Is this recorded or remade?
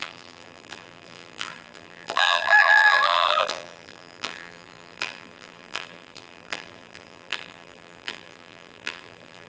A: remade